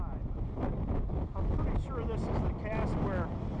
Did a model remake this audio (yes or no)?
no